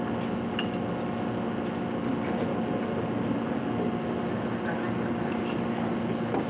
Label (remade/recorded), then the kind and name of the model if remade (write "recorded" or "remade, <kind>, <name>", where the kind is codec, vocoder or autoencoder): recorded